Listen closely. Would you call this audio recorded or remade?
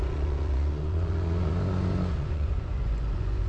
remade